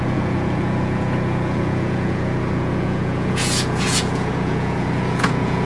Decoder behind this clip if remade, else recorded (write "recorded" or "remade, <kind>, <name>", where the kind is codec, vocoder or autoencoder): remade, vocoder, Vocos